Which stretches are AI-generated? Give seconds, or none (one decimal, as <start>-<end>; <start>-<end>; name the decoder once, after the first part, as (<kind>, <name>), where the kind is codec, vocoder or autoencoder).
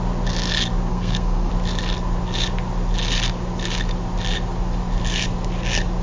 0.9-1.5 (codec, SNAC)